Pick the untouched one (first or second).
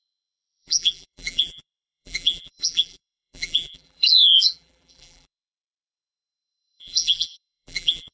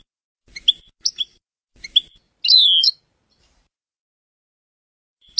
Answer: second